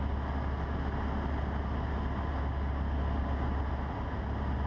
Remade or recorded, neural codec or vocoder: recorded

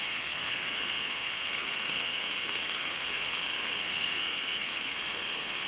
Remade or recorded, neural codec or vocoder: remade, codec, SNAC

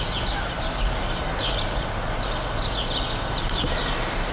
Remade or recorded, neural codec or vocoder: recorded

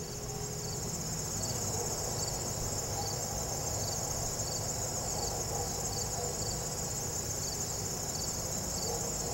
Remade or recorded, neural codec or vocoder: recorded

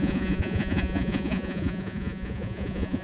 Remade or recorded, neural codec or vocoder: remade, vocoder, Vocos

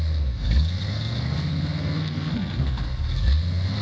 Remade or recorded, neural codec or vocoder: remade, codec, SNAC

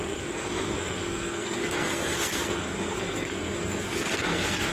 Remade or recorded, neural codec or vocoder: remade, codec, SNAC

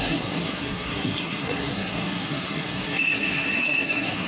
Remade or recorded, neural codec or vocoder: remade, codec, SNAC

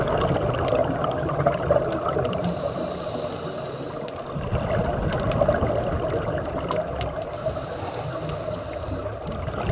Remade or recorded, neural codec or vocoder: recorded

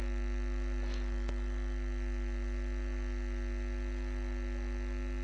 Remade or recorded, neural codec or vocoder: recorded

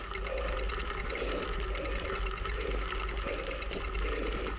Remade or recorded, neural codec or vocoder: recorded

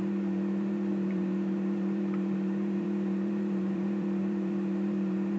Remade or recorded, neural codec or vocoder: remade, vocoder, BigVGAN v2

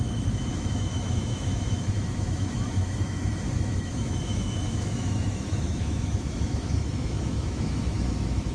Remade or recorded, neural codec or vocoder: remade, autoencoder, DAC-VAE